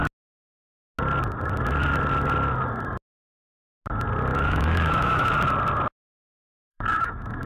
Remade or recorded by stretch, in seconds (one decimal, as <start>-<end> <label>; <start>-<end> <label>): 0.0-4.3 recorded; 4.3-5.3 remade; 5.3-6.4 recorded; 6.4-7.5 remade